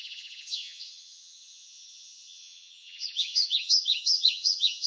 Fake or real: fake